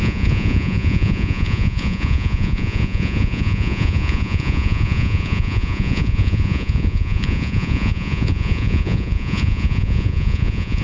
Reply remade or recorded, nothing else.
remade